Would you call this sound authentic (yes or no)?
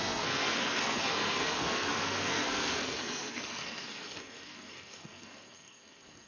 no